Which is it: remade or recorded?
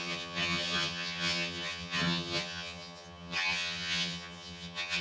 remade